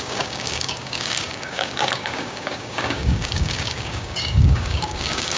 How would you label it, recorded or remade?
remade